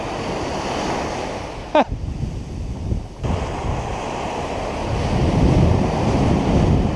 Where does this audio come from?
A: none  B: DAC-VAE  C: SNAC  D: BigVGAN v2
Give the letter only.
A